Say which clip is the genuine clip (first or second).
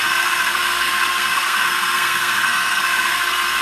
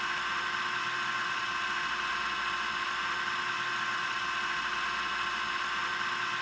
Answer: second